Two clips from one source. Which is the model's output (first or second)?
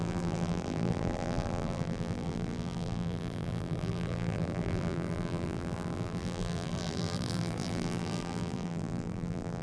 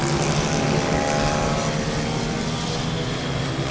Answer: first